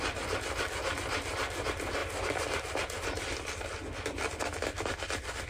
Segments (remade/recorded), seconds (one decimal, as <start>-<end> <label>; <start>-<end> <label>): 0.0-5.5 recorded